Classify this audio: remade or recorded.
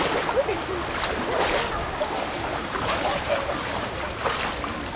recorded